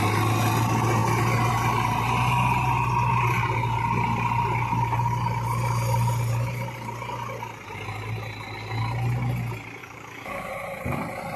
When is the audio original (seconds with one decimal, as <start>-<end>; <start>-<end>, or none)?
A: 0.0-9.8; 10.5-11.4